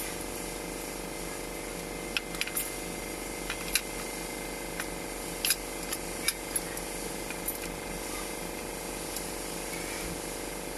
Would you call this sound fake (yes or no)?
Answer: no